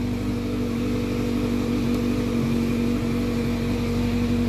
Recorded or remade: recorded